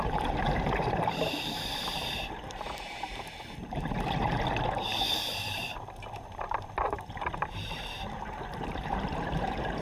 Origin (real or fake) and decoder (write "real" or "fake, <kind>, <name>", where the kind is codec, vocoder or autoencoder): fake, vocoder, BigVGAN v2